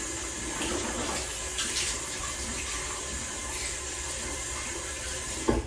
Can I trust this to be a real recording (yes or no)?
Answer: yes